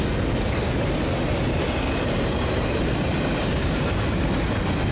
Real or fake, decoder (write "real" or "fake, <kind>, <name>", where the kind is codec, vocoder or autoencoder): real